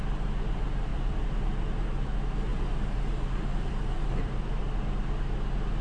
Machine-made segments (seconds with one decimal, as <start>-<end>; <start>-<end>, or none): 0.9-2.1; 2.5-4.6